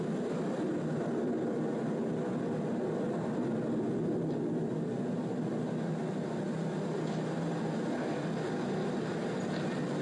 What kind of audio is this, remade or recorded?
recorded